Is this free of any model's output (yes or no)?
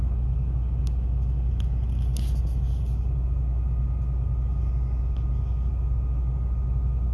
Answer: yes